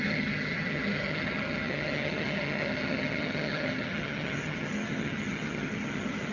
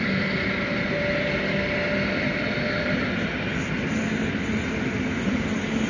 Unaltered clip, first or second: second